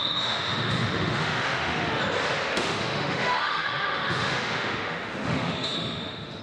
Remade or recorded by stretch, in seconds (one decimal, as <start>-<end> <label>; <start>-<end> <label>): 0.0-2.0 remade; 2.0-2.5 recorded; 2.5-6.4 remade